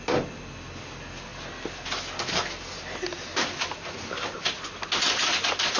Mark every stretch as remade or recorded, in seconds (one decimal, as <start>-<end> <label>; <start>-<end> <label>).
0.0-5.8 recorded